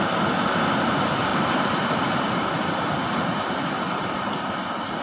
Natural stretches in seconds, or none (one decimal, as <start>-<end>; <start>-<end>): 0.0-1.3; 4.3-5.0